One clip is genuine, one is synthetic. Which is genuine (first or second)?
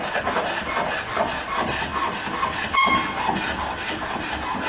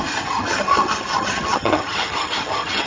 first